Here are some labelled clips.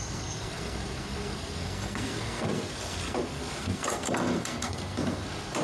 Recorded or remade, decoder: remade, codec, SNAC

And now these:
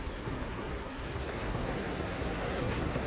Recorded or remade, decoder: remade, codec, SNAC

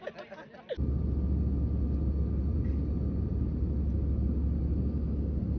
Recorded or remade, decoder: recorded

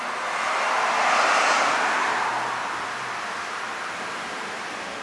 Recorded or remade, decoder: recorded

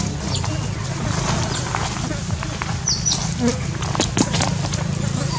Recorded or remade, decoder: recorded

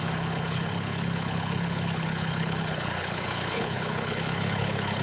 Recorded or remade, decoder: remade, codec, HILCodec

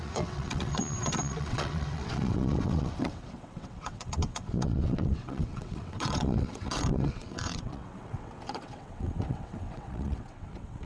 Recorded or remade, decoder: remade, vocoder, WaveNeXt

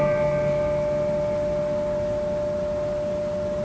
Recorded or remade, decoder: recorded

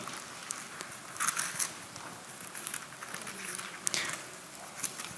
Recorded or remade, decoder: recorded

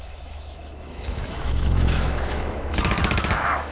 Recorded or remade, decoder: remade, autoencoder, DAC-VAE